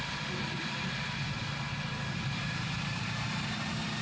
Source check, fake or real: fake